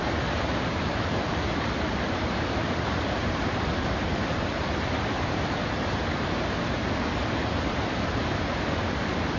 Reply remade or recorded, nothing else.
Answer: remade